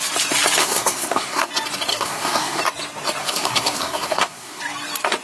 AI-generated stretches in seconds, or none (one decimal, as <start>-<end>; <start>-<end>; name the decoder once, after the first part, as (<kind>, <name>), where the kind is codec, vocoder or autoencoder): 0.6-1.5 (codec, SNAC); 1.9-2.6; 3.2-4.6

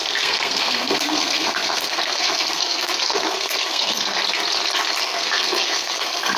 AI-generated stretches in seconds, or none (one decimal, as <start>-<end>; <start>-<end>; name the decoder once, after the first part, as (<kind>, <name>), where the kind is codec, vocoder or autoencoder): 0.0-4.2 (codec, SNAC); 5.0-6.4

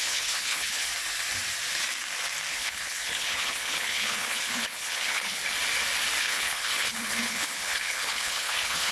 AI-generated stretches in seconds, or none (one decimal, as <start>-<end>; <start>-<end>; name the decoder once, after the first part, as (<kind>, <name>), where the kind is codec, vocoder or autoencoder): 0.0-0.9 (codec, HILCodec); 2.5-5.4; 6.2-8.9

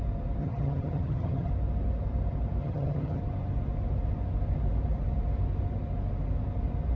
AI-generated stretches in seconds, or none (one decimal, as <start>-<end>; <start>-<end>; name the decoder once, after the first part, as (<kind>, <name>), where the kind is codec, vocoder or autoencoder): 0.4-1.5 (vocoder, HiFi-GAN); 2.6-3.2

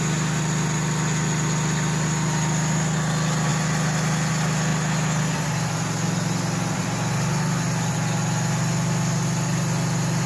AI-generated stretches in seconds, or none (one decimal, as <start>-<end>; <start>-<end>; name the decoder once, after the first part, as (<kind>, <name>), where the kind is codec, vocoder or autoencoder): none

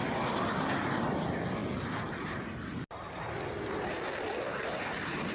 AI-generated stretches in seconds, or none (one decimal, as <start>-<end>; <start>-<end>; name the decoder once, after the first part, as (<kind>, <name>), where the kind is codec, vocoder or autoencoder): none

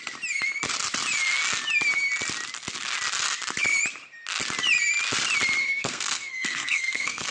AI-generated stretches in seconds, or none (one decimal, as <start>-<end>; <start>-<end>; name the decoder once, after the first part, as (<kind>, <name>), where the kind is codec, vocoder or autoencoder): 5.6-7.3 (codec, SNAC)